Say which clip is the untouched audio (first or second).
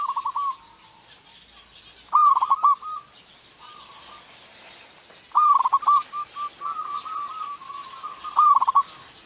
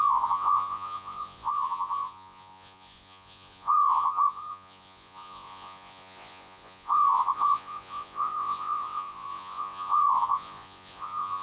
first